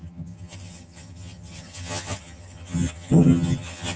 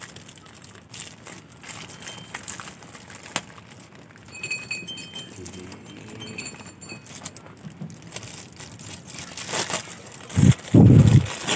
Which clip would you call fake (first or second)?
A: first